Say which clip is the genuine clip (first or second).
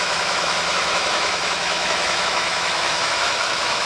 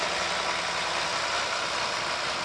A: second